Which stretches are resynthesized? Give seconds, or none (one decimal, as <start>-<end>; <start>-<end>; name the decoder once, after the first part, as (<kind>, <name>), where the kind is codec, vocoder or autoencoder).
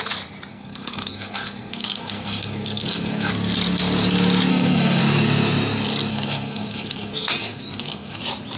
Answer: 0.5-3.3 (codec, SNAC); 4.5-5.0; 6.1-8.2